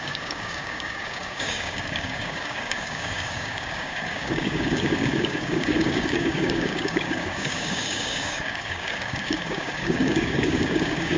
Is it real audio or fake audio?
fake